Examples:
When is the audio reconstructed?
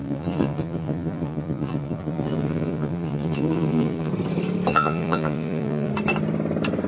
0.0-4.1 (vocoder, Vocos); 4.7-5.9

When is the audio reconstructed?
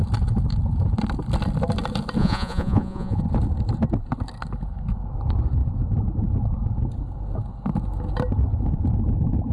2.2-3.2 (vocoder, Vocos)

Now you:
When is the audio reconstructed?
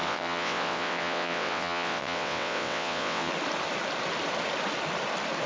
0.0-3.3 (vocoder, WaveNeXt)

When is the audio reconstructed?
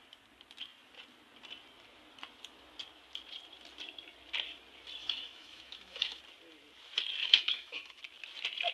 5.0-6.2 (autoencoder, DAC-VAE); 7.2-8.0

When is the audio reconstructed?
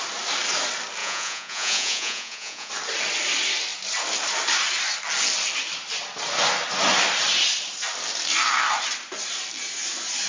1.0-2.7 (vocoder, Vocos)